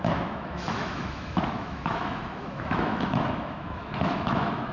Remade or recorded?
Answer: remade